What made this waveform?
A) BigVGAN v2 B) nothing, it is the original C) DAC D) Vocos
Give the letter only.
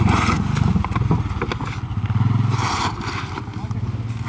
B